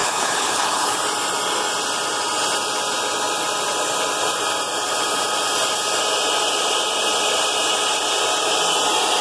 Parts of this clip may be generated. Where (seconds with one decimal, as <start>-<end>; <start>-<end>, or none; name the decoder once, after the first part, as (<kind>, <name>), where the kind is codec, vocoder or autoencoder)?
0.0-1.0 (codec, HILCodec)